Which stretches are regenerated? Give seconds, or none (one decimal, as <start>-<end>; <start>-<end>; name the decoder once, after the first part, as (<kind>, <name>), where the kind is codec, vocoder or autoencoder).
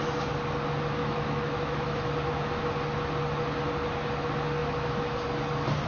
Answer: 1.0-2.7 (autoencoder, DAC-VAE); 4.6-5.3